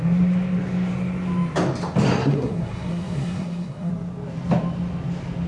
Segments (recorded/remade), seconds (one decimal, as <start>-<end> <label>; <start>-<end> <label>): 0.0-2.2 recorded; 2.2-3.9 remade; 3.9-5.5 recorded